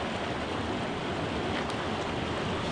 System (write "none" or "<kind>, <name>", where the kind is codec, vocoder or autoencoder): none